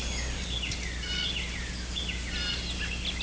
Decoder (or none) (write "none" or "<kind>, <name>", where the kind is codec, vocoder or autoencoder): none